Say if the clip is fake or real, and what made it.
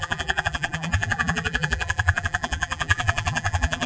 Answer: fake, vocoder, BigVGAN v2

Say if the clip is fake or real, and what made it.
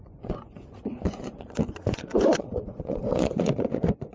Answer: fake, vocoder, Vocos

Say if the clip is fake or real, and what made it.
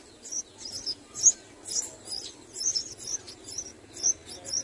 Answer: real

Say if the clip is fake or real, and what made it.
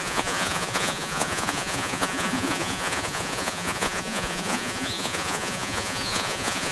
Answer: fake, vocoder, Vocos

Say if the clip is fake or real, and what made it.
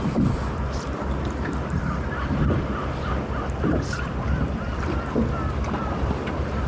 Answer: real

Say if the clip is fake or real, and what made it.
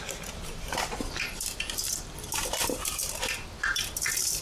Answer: fake, vocoder, BigVGAN v2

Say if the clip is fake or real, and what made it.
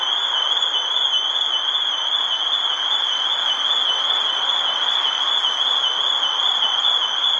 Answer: real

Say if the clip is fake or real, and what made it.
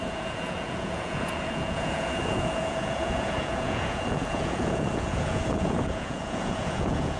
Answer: fake, vocoder, Vocos